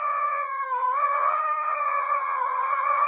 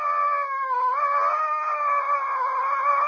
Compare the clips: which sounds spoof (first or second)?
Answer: first